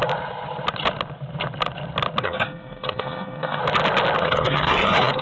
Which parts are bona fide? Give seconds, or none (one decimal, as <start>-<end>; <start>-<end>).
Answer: 0.0-2.2; 3.6-4.2